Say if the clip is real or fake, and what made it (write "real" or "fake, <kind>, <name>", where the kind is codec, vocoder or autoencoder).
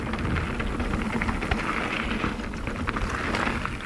real